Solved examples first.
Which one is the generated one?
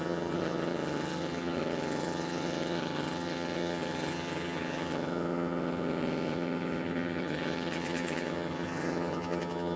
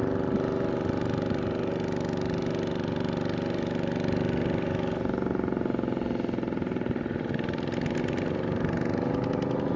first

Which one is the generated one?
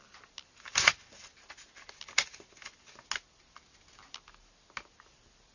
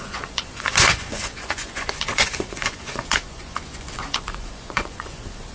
second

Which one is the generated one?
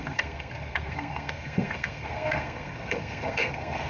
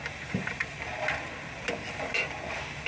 first